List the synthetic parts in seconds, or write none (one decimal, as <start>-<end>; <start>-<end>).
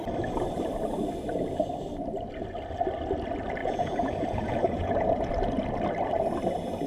3.6-5.3